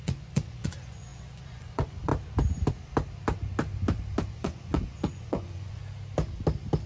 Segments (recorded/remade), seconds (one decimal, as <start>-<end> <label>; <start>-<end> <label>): 0.0-2.1 remade; 2.1-4.3 recorded; 4.3-5.8 remade; 5.8-6.9 recorded